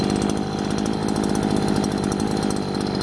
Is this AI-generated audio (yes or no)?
no